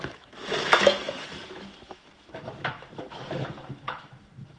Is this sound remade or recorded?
remade